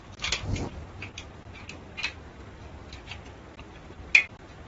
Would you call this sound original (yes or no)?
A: yes